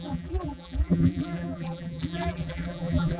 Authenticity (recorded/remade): remade